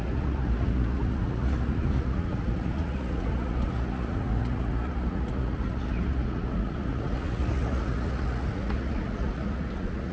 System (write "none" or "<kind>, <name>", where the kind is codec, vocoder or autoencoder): vocoder, Vocos